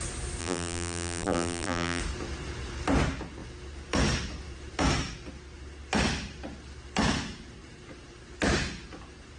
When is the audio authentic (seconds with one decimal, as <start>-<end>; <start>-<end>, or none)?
0.0-0.4; 2.0-9.4

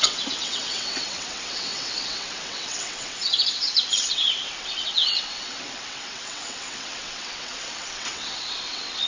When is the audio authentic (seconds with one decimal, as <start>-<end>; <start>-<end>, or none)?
none